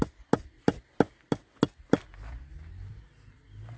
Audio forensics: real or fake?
real